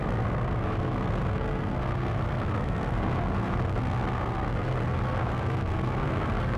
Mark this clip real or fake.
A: fake